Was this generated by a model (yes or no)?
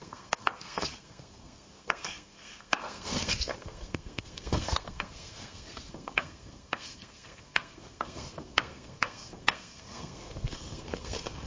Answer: yes